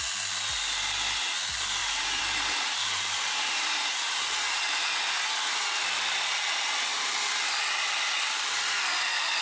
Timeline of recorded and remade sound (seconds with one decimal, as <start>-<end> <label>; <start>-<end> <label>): 0.0-1.8 recorded; 1.8-4.8 remade; 4.8-6.9 recorded; 6.9-7.5 remade; 7.5-9.4 recorded